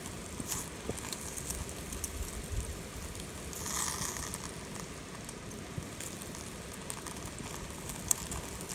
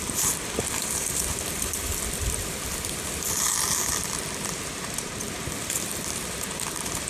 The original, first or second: first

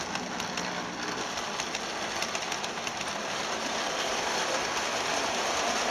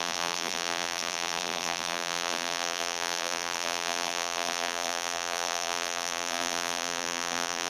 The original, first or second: first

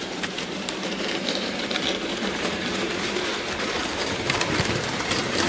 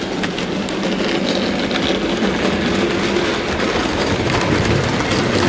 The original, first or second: second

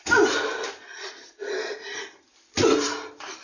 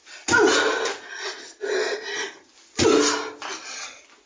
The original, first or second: second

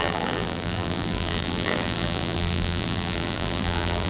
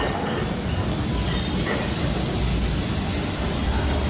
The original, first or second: second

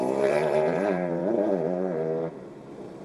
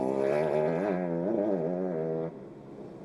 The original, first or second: second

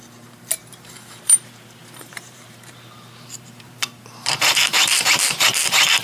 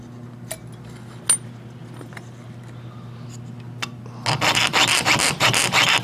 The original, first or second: second